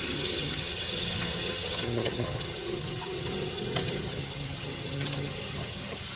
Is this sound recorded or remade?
remade